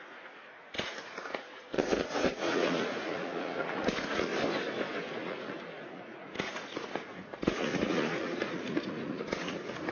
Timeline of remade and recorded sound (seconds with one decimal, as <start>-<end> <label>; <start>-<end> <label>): 0.0-4.3 remade; 4.3-5.2 recorded; 5.2-9.9 remade